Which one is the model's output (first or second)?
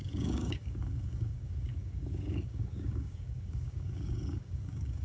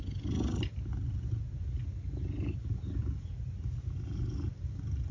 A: first